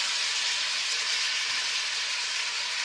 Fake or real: real